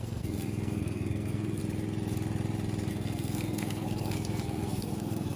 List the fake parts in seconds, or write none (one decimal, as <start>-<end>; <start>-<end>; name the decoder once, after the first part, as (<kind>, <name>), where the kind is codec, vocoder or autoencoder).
0.0-1.6 (codec, SNAC); 2.9-5.4